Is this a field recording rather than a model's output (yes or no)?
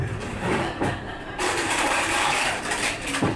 no